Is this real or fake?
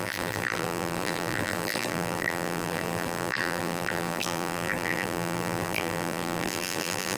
fake